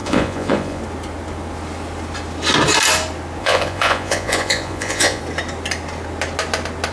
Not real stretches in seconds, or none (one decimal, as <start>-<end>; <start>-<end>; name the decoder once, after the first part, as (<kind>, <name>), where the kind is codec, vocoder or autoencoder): 0.0-0.8 (vocoder, Vocos); 3.4-5.2